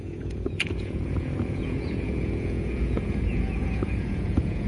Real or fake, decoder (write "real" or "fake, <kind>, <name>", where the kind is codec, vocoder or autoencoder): fake, vocoder, Vocos